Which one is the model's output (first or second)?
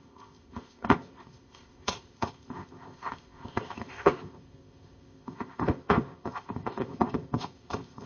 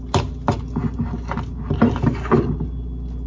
first